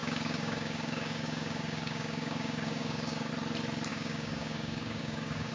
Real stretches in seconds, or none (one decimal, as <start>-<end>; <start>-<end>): 3.3-3.9